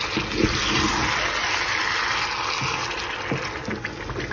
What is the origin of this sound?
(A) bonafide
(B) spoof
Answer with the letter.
A